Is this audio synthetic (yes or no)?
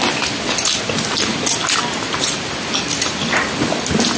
no